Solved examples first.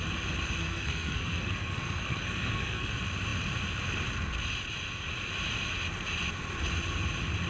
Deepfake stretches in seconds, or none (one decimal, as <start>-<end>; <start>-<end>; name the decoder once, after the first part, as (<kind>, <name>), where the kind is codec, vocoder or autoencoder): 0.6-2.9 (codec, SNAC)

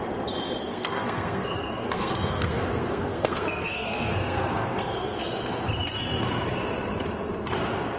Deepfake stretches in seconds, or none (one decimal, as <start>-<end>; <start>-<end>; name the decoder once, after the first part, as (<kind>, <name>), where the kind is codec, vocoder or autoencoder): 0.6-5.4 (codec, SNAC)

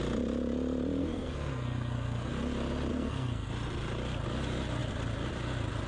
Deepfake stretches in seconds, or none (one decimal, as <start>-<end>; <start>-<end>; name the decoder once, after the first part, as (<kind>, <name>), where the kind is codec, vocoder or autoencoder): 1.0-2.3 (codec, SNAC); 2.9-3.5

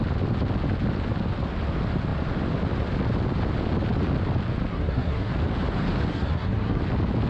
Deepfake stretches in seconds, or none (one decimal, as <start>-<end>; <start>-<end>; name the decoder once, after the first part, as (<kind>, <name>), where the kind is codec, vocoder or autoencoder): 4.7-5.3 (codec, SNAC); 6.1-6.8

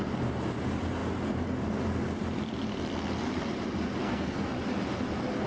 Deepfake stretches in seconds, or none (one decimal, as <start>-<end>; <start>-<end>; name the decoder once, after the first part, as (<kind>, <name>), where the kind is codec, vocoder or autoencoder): 4.0-4.5 (codec, SNAC)